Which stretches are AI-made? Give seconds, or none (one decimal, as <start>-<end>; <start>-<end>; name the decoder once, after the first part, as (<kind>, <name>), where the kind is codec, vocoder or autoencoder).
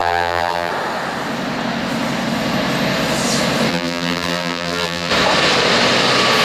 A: 0.0-0.7 (vocoder, BigVGAN v2); 3.7-5.1